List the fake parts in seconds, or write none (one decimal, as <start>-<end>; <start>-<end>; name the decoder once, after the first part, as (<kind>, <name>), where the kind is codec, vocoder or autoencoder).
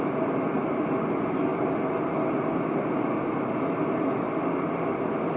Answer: none